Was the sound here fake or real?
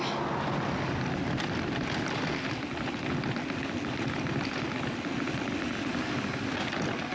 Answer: real